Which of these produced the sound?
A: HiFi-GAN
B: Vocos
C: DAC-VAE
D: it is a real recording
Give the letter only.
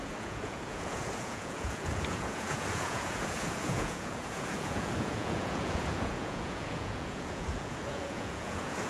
B